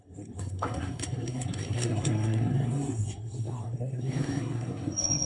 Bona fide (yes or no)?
no